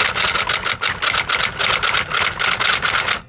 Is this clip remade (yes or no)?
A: no